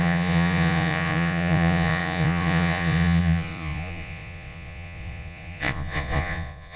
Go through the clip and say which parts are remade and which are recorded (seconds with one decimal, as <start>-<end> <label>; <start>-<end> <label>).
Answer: 0.0-6.8 remade